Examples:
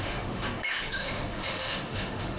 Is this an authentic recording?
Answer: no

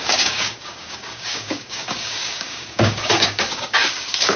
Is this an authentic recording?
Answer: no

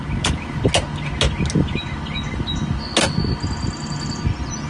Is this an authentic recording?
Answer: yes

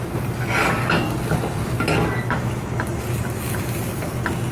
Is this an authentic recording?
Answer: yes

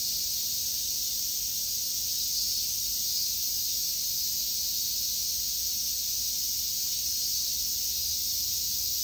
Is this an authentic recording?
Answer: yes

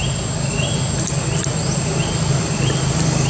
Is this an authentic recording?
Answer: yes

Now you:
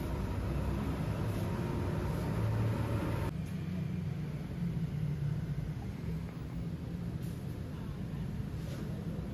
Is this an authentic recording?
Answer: yes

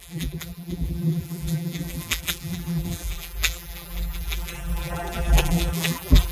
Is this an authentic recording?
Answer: no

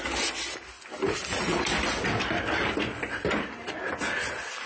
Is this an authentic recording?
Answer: yes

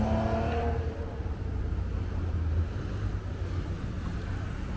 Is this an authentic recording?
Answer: yes